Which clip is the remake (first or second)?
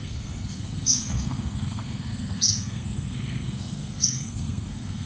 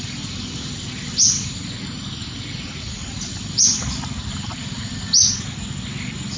first